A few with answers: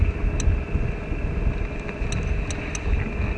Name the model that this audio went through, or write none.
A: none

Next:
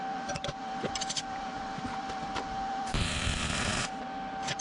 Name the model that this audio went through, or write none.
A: vocoder, BigVGAN v2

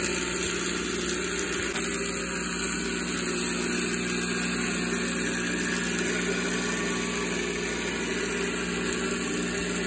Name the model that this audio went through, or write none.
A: none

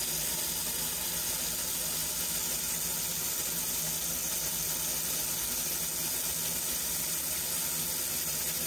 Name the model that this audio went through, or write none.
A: none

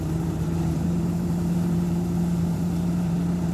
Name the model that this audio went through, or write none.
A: vocoder, BigVGAN v2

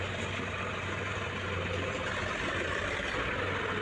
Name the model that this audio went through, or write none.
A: none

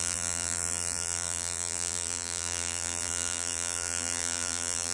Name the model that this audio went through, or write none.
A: vocoder, BigVGAN v2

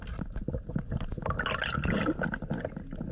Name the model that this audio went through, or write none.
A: none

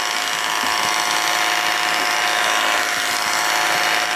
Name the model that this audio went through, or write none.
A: none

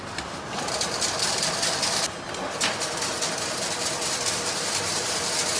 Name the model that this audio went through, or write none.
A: none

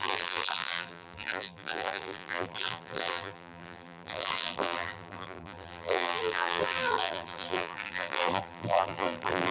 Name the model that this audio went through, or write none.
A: vocoder, BigVGAN v2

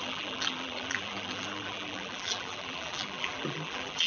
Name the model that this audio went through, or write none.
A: vocoder, BigVGAN v2